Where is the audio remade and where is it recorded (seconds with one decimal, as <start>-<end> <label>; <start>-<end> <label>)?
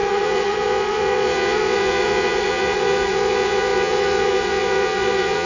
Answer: 0.0-5.5 remade